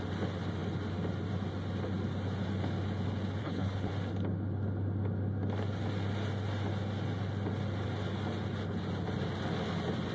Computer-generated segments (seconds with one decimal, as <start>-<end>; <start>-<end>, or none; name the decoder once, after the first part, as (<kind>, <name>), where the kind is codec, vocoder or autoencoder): 3.4-3.9 (codec, HILCodec)